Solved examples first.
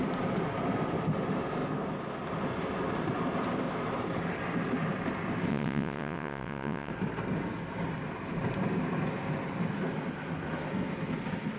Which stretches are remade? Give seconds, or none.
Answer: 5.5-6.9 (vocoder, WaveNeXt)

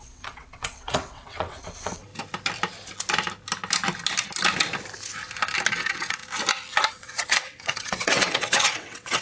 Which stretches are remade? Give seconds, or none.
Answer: 0.0-2.1 (vocoder, WaveNeXt); 5.7-6.2; 6.9-9.2

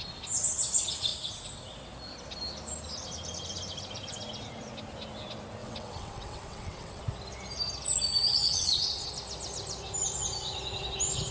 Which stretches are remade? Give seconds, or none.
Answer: 5.6-7.0 (vocoder, WaveNeXt); 8.4-9.1

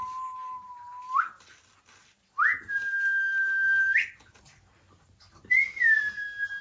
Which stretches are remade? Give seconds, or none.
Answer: none

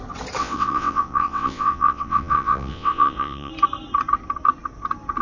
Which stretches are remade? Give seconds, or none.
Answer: 0.4-3.5 (vocoder, WaveNeXt)

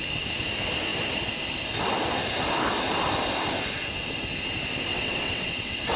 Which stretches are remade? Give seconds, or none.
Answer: 4.9-6.0 (vocoder, WaveNeXt)

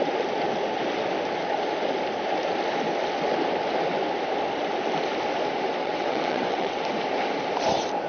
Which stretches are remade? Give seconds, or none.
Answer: 5.8-6.8 (vocoder, WaveNeXt)